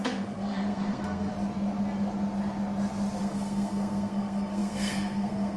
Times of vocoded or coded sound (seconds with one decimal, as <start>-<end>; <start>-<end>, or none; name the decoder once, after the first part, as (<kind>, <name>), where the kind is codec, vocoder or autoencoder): 0.0-1.3 (codec, SNAC); 3.2-5.6